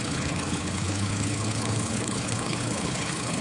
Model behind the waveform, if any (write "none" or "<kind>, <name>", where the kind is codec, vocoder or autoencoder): codec, HILCodec